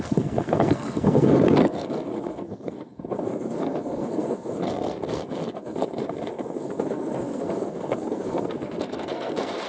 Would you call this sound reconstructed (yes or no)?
yes